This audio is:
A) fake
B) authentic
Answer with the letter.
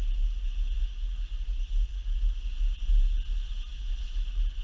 B